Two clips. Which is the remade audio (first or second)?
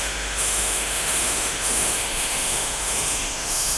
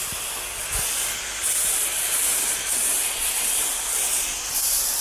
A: first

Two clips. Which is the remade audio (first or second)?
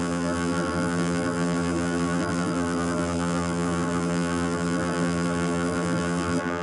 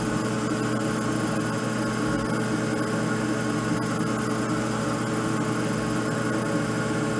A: first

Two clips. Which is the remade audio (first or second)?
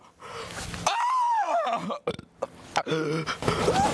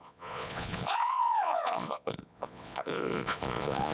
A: second